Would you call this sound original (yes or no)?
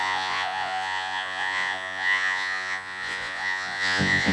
no